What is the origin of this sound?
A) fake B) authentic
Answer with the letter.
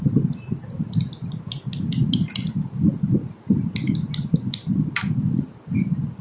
B